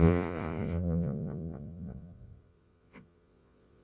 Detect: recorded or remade remade